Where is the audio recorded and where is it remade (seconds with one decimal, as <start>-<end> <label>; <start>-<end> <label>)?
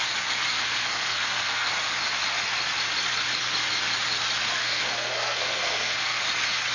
0.0-0.5 recorded; 0.5-1.7 remade; 1.7-4.6 recorded; 4.6-6.2 remade; 6.2-6.7 recorded